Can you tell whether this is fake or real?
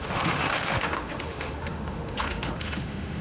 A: fake